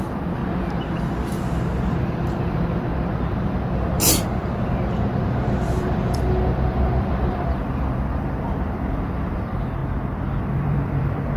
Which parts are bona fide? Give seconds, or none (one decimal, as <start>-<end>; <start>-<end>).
0.4-1.9; 2.9-5.8; 9.8-10.4